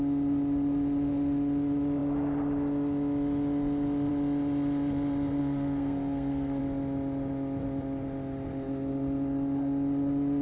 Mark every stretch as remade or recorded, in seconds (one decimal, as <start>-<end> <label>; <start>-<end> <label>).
0.0-5.4 recorded; 5.4-6.6 remade; 6.6-10.4 recorded